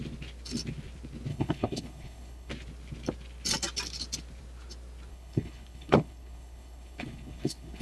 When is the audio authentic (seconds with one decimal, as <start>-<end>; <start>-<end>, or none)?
0.0-1.3; 2.5-5.1